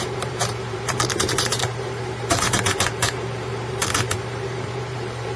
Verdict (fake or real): fake